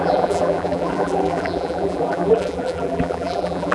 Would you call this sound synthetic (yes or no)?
yes